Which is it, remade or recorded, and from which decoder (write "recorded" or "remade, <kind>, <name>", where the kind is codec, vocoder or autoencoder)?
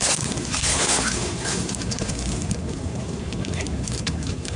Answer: remade, codec, SNAC